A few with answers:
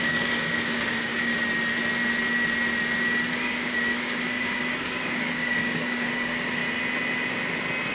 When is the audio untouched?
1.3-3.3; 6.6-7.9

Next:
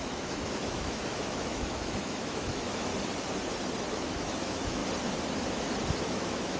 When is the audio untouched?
2.9-3.9; 4.8-6.1

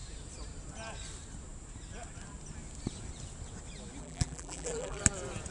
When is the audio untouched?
0.0-4.0; 5.0-5.5

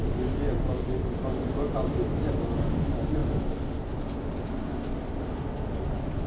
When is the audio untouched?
0.0-6.3

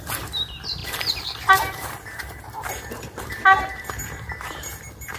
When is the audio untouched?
none

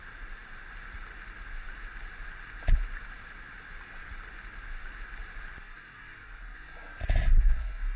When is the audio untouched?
0.0-8.0

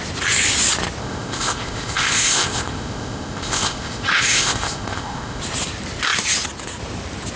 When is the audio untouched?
0.0-1.0; 5.4-7.4

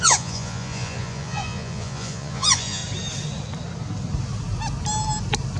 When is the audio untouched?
2.8-5.6